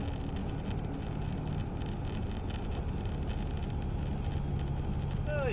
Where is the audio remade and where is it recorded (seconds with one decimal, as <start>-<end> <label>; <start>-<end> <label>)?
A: 0.0-5.5 recorded